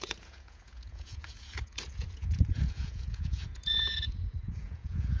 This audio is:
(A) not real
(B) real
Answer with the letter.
A